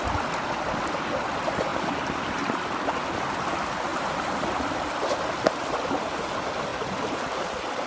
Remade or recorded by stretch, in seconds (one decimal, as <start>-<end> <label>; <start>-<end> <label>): 0.0-3.9 recorded; 3.9-4.7 remade; 4.7-7.9 recorded